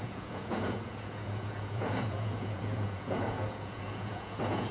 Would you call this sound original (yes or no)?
no